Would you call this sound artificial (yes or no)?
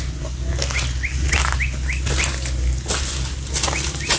no